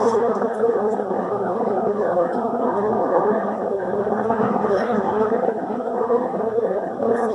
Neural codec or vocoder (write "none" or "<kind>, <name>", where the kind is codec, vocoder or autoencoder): codec, SNAC